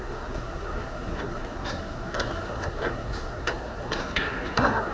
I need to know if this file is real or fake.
fake